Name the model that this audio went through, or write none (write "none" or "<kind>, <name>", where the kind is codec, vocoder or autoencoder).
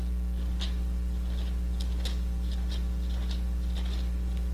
none